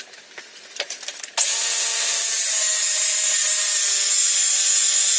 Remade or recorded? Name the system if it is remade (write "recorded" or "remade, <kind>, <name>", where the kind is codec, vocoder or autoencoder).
recorded